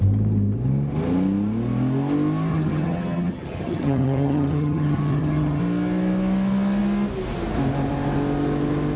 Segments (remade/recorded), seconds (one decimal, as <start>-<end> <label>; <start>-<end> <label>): 0.0-2.5 recorded; 2.5-5.6 remade; 5.6-9.0 recorded